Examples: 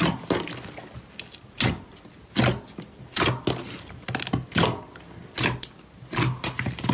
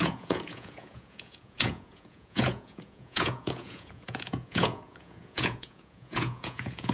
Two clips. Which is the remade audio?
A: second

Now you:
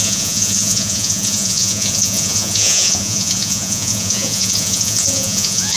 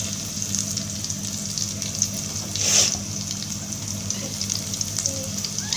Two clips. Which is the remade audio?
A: first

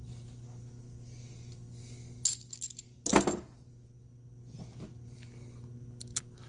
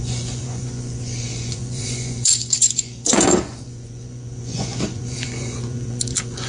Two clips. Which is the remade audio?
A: second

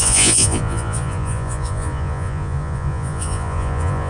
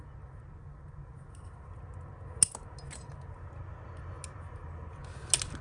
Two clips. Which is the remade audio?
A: first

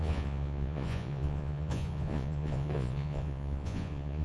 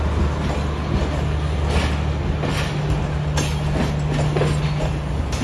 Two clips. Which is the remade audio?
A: first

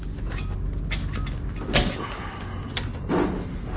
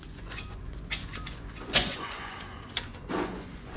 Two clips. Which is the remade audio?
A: second